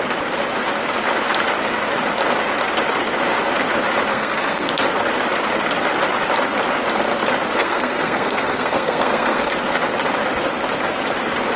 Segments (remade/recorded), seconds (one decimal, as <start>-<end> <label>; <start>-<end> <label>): 0.0-4.1 recorded; 4.1-4.7 remade; 4.7-7.6 recorded; 7.6-9.5 remade; 9.5-11.6 recorded

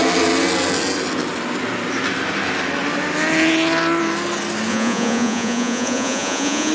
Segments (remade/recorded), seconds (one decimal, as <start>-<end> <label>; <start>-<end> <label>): 0.0-4.7 recorded; 4.7-6.7 remade